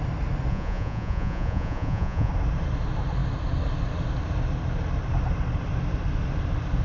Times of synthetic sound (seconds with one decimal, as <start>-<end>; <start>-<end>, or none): 0.5-2.3

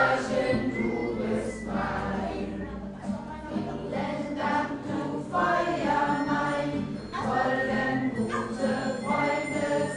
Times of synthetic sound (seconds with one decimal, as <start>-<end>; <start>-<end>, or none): none

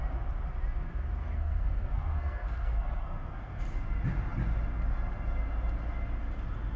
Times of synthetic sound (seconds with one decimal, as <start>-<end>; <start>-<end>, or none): 1.2-3.6

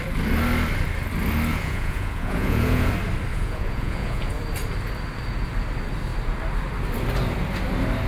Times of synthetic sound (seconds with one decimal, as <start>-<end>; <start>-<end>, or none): 1.5-2.9; 3.3-4.3

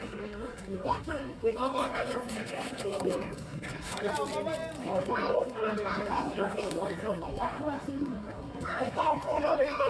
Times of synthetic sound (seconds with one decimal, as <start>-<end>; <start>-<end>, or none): 0.0-4.1; 4.8-9.9

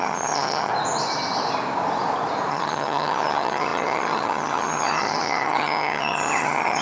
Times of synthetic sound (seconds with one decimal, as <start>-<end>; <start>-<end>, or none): 0.0-0.7; 2.5-6.8

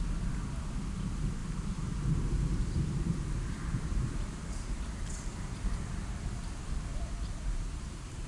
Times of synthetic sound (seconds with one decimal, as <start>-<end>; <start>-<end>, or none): 1.4-6.0; 6.9-8.3